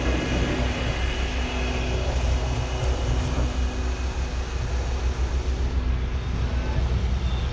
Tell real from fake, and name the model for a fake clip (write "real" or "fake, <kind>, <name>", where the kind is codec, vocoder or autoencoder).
real